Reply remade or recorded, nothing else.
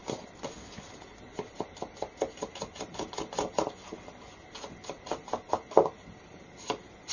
recorded